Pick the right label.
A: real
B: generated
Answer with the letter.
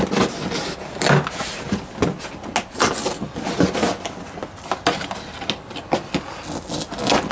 A